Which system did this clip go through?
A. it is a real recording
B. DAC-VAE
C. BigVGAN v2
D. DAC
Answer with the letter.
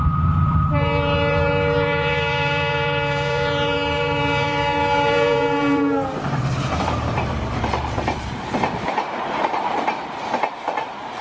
C